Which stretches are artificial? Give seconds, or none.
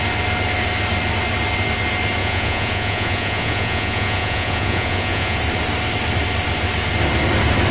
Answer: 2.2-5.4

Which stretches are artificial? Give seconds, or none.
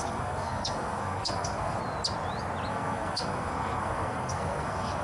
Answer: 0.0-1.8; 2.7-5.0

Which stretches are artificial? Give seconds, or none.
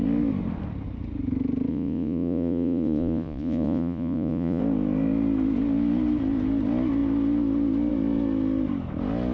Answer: 1.7-4.6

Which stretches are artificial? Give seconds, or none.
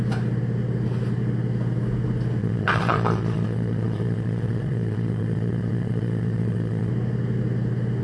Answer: 2.4-6.9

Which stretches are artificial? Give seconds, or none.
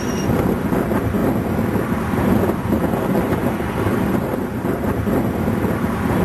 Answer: 0.0-1.2; 1.8-6.2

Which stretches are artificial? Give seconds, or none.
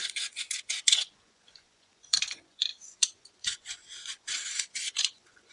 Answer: 0.0-5.5